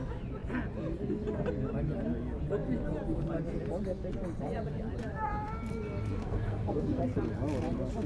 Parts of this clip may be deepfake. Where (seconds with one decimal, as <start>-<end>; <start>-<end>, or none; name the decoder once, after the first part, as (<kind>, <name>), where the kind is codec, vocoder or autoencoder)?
6.2-7.0 (codec, SNAC)

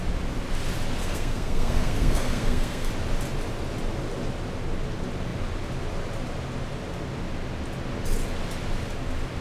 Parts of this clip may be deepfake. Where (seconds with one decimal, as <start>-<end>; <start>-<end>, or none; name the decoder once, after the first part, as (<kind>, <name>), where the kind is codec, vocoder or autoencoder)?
1.0-2.9 (codec, SNAC)